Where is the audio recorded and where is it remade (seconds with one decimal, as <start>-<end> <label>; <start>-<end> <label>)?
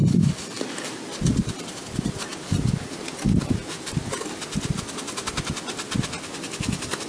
0.0-7.1 remade